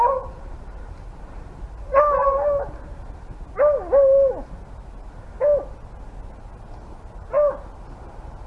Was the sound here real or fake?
real